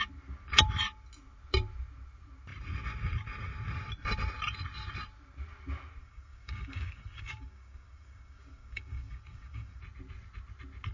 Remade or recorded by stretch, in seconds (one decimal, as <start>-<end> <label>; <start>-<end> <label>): 0.0-6.0 recorded; 6.0-9.8 remade; 9.8-10.9 recorded